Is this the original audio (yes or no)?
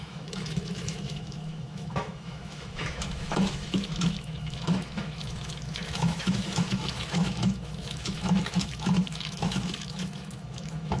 no